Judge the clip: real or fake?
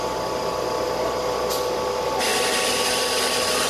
real